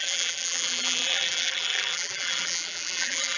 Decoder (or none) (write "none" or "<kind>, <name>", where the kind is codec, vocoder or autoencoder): vocoder, BigVGAN v2